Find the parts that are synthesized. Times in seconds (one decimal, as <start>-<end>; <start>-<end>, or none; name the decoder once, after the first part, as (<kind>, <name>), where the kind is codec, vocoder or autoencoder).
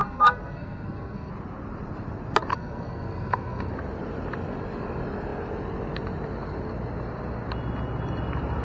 0.0-1.3 (codec, SNAC); 2.5-3.7